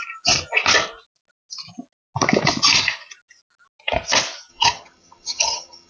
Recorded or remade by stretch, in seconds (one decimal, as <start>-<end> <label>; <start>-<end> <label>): 0.0-4.5 recorded; 4.5-5.9 remade